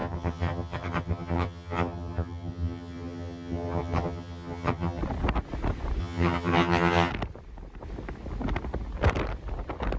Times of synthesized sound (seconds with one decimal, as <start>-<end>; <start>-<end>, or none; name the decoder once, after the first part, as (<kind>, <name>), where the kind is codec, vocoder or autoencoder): 0.0-5.0 (vocoder, HiFi-GAN); 6.0-7.1